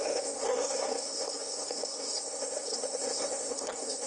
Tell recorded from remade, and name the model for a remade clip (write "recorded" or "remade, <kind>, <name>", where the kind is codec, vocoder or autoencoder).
remade, codec, SNAC